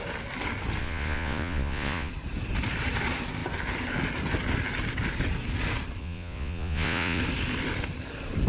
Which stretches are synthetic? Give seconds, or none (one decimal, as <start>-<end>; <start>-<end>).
0.8-2.1; 6.0-7.2